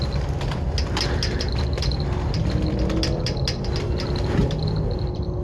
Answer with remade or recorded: recorded